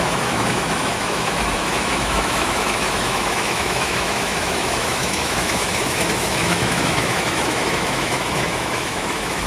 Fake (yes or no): yes